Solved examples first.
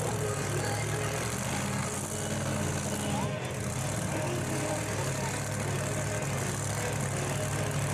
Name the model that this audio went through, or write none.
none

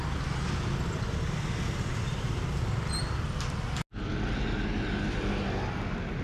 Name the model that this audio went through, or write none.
none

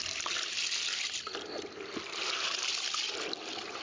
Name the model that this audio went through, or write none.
none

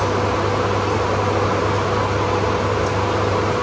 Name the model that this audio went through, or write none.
none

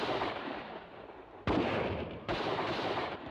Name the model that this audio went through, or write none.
vocoder, BigVGAN v2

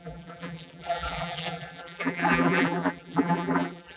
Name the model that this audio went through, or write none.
vocoder, BigVGAN v2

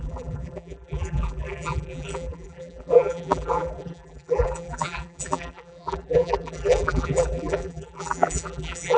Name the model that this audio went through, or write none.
vocoder, BigVGAN v2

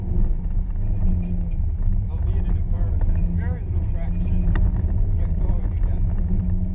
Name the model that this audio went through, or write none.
none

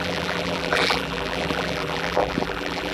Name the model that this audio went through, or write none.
vocoder, BigVGAN v2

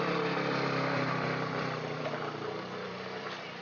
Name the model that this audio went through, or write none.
vocoder, BigVGAN v2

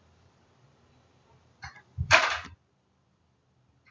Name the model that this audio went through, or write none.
vocoder, BigVGAN v2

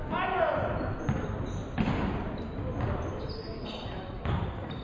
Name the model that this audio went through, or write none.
none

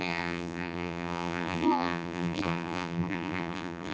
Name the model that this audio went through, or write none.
vocoder, BigVGAN v2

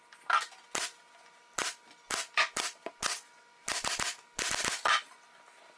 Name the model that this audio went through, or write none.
vocoder, BigVGAN v2